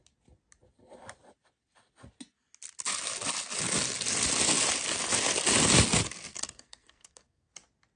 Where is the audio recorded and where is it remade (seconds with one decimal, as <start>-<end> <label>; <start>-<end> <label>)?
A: 0.0-6.3 recorded; 6.3-7.5 remade; 7.5-8.0 recorded